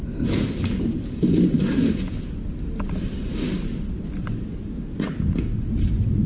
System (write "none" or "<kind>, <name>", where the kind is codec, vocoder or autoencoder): none